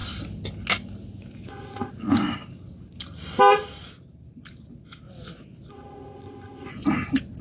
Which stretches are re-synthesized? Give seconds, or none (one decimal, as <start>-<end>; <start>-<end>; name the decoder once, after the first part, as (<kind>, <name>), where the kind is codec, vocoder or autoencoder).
1.5-1.9 (codec, ZipCodec); 5.7-6.7